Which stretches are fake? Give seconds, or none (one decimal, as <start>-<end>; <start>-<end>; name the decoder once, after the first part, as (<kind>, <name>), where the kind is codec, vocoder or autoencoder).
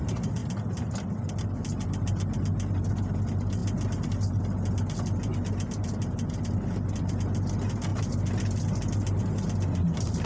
none